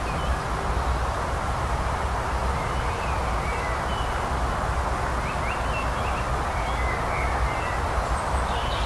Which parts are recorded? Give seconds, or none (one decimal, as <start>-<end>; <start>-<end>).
0.0-8.9